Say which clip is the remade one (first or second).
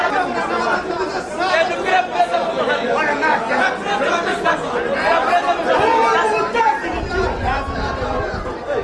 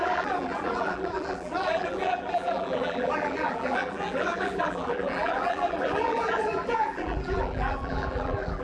second